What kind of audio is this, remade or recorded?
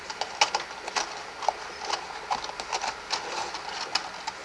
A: recorded